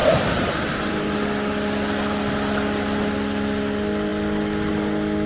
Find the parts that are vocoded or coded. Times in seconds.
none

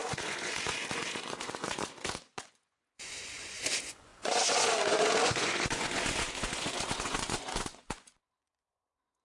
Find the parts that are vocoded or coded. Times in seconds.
0.0-9.2 (vocoder, Vocos)

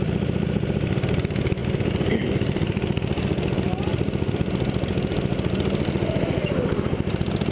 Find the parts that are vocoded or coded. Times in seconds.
none

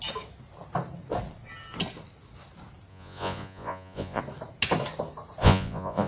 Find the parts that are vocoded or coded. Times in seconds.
2.9-4.2 (vocoder, Vocos); 5.4-6.1

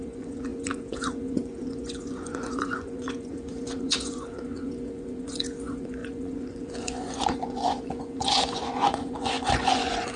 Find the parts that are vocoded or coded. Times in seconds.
0.0-10.2 (vocoder, Vocos)